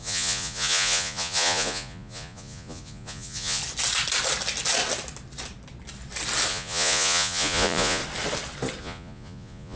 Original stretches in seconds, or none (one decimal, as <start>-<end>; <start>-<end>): 3.6-6.5; 8.0-8.8